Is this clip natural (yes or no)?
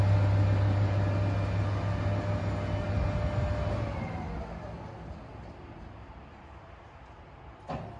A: yes